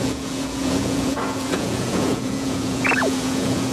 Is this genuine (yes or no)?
no